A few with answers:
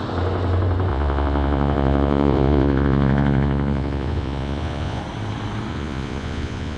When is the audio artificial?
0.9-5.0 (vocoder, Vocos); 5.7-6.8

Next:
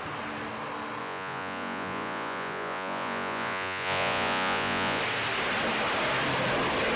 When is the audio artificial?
1.0-5.0 (vocoder, Vocos)

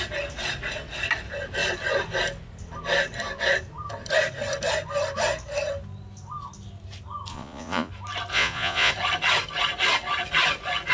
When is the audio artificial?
7.3-7.9 (vocoder, Vocos); 8.3-8.9

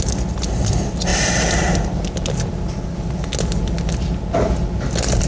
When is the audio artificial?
none

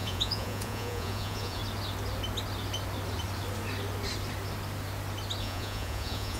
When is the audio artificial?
0.0-1.6 (vocoder, Vocos); 5.4-6.4